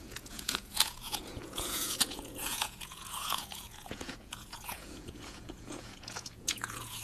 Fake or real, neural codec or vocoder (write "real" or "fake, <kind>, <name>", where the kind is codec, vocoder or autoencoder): fake, vocoder, Vocos